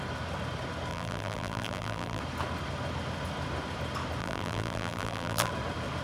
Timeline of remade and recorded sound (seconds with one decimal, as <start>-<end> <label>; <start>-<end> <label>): 0.0-0.9 recorded; 0.9-2.2 remade; 2.2-4.2 recorded; 4.2-5.5 remade; 5.5-6.0 recorded